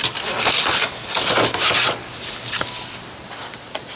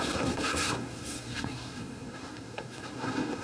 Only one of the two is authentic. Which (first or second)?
first